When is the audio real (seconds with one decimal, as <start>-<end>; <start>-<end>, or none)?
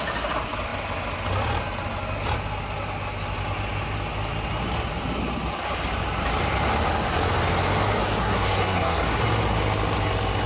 0.0-8.2; 9.2-10.5